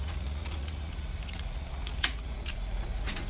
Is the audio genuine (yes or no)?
no